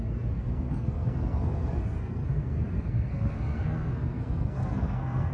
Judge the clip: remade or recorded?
remade